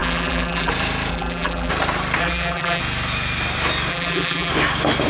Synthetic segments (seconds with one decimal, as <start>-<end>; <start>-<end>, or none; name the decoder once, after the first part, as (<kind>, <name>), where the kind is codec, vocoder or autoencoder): 0.0-0.7 (vocoder, BigVGAN v2); 1.1-1.7; 2.2-2.8; 3.9-4.5